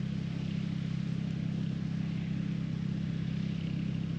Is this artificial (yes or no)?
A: no